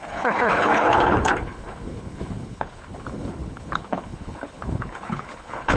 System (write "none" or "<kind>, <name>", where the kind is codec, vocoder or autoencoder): codec, HILCodec